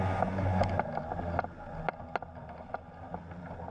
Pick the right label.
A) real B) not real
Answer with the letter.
A